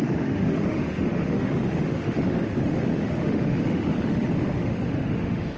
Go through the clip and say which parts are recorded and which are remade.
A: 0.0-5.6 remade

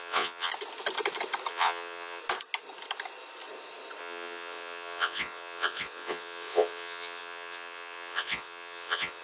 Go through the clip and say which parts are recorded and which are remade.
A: 0.0-0.5 remade; 0.5-1.5 recorded; 1.5-2.2 remade; 2.2-4.0 recorded; 4.0-9.2 remade

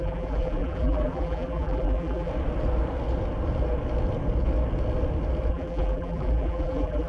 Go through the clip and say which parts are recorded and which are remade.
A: 0.0-2.3 remade; 2.3-5.5 recorded; 5.5-7.1 remade

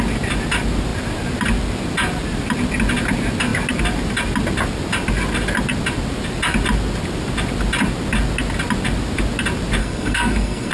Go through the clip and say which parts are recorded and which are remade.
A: 0.0-9.8 recorded; 9.8-10.7 remade

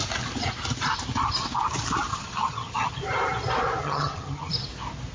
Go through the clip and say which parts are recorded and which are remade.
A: 0.0-2.1 recorded; 2.1-3.0 remade; 3.0-3.8 recorded; 3.8-4.5 remade; 4.5-5.1 recorded

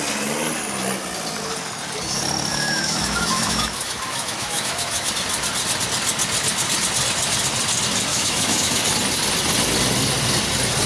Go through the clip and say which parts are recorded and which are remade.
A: 0.0-2.5 recorded; 2.5-5.1 remade; 5.1-8.1 recorded; 8.1-8.8 remade; 8.8-10.9 recorded